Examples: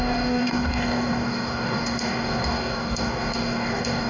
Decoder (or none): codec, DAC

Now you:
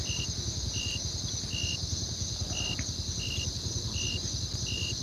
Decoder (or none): none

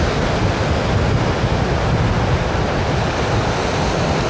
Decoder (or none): none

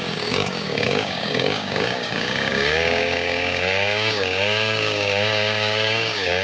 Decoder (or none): codec, DAC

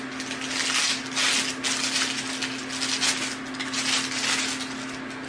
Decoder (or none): none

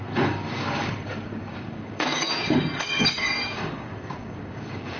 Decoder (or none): codec, DAC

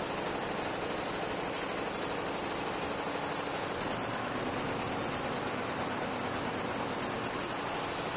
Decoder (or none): none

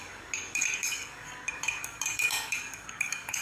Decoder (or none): codec, DAC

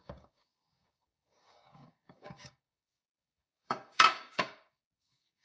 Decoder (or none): codec, DAC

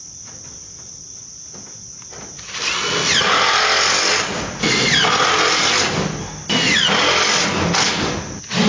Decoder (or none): none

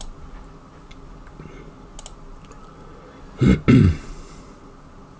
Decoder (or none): none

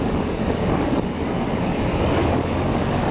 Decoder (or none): codec, DAC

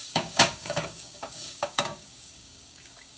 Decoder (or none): codec, DAC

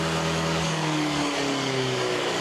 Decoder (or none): codec, DAC